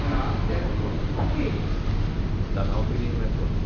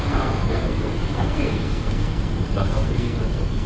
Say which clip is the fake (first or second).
second